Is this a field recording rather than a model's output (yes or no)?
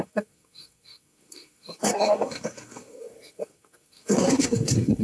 no